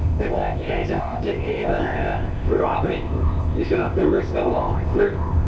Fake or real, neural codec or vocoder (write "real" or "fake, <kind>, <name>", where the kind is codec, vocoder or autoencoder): fake, codec, ZipCodec